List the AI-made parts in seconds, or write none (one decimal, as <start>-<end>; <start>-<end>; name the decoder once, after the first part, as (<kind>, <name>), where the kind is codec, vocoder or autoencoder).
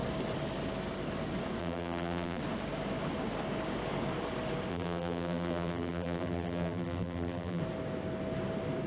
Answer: 1.6-2.4 (vocoder, BigVGAN v2); 4.7-7.6